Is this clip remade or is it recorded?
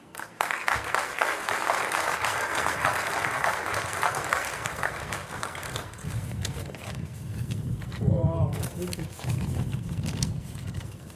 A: remade